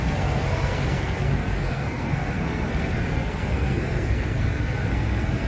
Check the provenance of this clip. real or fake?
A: fake